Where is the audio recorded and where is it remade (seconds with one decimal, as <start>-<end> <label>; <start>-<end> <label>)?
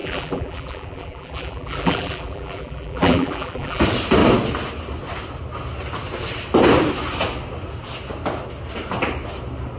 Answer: 0.0-3.8 remade; 3.8-9.8 recorded